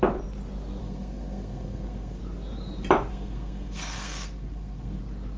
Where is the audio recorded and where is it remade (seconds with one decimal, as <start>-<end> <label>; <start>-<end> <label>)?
0.0-0.8 recorded; 0.8-2.2 remade; 2.2-3.1 recorded; 3.1-5.0 remade; 5.0-5.4 recorded